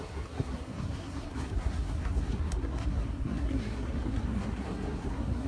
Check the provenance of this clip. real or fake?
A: fake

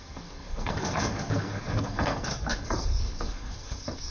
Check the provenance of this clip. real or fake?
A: fake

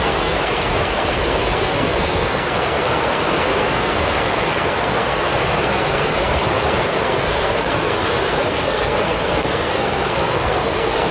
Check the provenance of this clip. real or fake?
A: fake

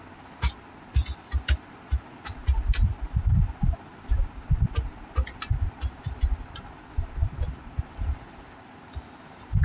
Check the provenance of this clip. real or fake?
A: real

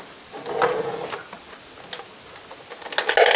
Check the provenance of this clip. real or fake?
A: real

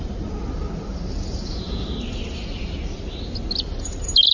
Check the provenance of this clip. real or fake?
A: real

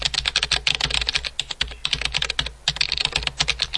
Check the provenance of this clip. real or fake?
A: real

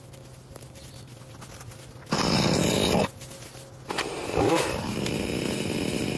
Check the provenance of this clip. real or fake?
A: real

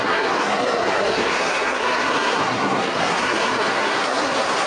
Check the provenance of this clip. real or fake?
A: fake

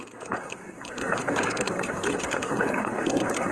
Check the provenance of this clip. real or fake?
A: fake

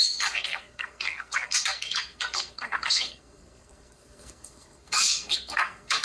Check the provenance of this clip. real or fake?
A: fake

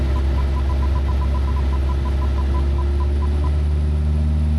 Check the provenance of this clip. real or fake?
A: real